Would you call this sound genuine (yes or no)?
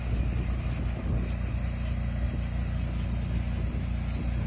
yes